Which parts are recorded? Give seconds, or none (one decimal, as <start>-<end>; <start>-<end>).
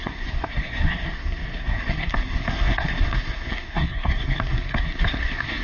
none